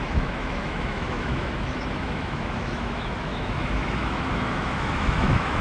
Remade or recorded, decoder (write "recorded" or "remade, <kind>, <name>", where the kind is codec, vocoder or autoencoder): remade, autoencoder, DAC-VAE